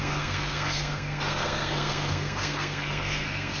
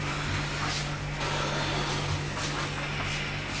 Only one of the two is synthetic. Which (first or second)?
first